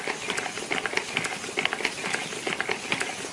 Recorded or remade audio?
recorded